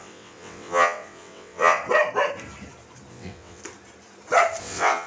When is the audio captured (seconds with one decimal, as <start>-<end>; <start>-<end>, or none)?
1.8-3.1; 3.6-4.6